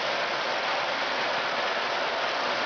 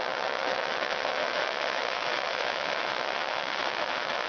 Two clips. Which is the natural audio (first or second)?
first